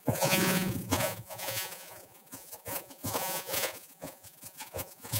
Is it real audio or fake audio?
fake